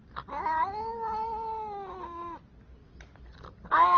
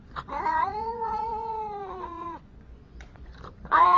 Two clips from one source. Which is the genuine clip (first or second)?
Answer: first